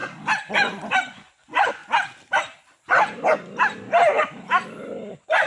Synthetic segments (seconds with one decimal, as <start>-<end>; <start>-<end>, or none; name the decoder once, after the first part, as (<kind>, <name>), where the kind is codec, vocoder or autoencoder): 0.5-1.8 (vocoder, Vocos); 5.1-5.5